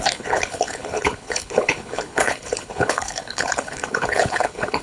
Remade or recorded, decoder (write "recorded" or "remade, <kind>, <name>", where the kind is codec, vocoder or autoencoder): remade, codec, HILCodec